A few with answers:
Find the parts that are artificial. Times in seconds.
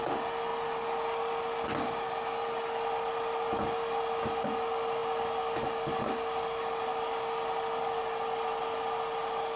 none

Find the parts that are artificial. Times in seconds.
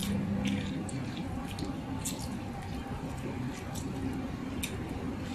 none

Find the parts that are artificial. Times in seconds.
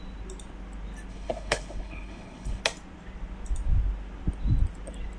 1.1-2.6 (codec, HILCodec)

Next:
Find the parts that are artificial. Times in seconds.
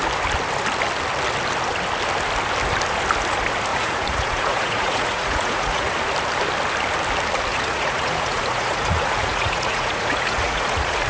3.7-5.9 (vocoder, Vocos); 7.5-11.1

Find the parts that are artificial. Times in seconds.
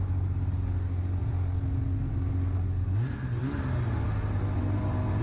none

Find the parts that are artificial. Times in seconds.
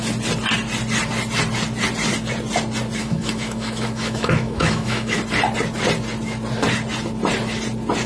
3.0-5.2 (autoencoder, DAC-VAE)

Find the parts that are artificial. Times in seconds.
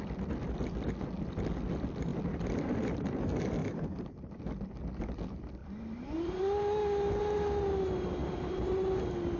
3.6-4.4 (vocoder, BigVGAN v2); 5.6-6.4; 8.2-8.7